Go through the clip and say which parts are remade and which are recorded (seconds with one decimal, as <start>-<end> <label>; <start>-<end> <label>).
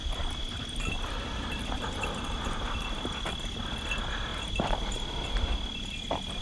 0.0-3.3 remade; 3.3-4.3 recorded; 4.3-5.5 remade; 5.5-6.4 recorded